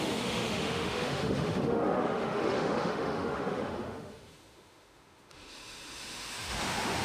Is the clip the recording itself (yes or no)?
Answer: no